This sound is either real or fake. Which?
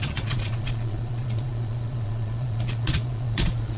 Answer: fake